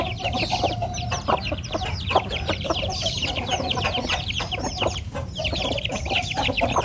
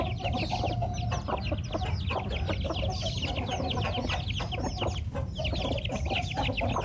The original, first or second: second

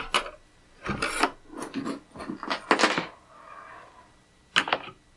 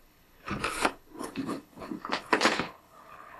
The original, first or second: first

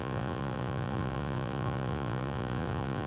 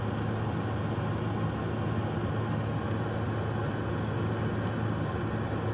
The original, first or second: second